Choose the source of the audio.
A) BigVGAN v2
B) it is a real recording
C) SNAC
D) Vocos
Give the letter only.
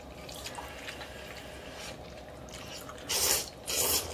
B